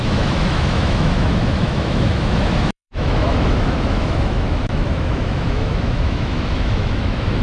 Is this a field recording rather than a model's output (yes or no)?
no